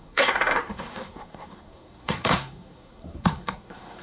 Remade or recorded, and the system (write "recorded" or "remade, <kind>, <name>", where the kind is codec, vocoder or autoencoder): remade, codec, SNAC